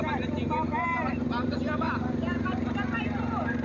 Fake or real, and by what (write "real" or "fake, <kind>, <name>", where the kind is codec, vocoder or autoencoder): fake, vocoder, BigVGAN v2